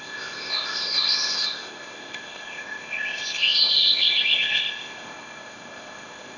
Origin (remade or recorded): remade